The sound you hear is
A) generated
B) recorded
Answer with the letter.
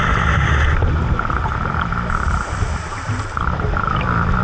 B